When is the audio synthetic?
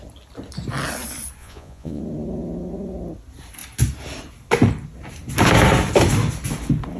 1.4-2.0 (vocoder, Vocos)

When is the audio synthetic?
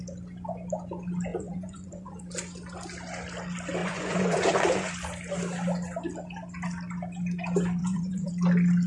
1.3-2.2 (vocoder, Vocos); 3.8-4.9; 7.8-8.3